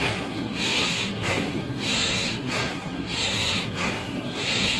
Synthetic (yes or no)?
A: yes